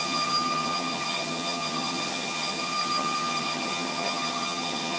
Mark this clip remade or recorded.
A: remade